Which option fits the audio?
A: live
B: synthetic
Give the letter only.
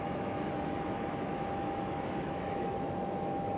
B